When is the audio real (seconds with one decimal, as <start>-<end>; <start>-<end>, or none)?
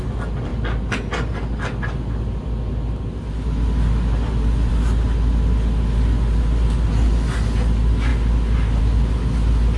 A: 0.0-9.8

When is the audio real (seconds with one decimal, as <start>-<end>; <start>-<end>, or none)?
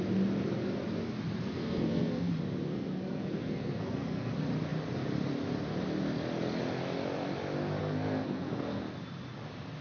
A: 0.0-1.4; 2.3-2.7; 4.3-7.8; 8.8-9.8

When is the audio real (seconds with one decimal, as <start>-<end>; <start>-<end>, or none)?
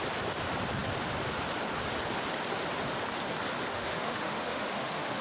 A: 0.0-3.7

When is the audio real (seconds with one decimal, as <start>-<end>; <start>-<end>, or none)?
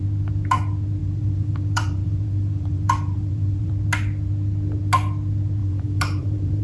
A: 0.0-1.0; 3.7-5.6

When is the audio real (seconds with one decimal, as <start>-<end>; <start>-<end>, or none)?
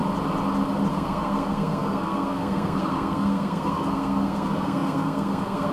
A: 0.0-0.9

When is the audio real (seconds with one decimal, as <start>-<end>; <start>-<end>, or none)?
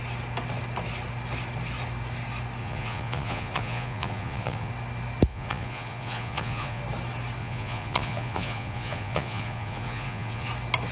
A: 0.0-2.6; 4.7-5.3; 6.8-7.4; 10.5-10.9